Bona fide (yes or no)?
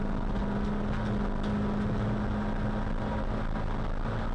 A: yes